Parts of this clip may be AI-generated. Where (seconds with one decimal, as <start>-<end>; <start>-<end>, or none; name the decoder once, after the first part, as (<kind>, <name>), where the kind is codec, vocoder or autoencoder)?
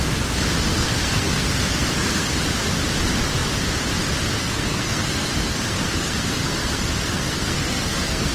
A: 0.7-2.3 (codec, SNAC); 4.4-8.3